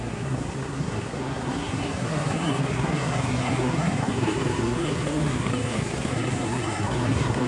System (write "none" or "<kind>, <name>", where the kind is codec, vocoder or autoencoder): codec, SNAC